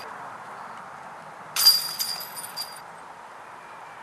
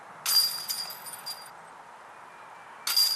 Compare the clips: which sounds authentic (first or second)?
second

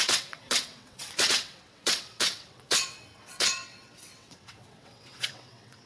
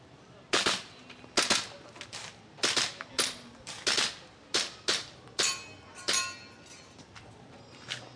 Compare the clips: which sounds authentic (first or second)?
second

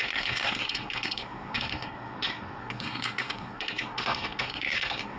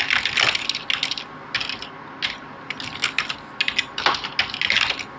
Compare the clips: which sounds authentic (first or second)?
second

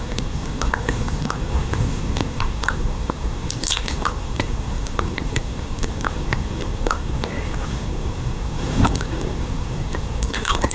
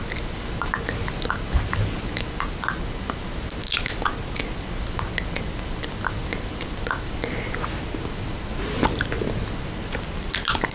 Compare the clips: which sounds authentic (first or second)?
second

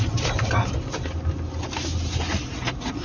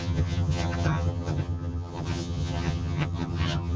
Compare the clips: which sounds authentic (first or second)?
first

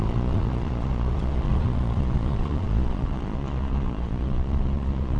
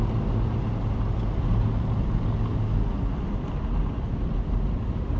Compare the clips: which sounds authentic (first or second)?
second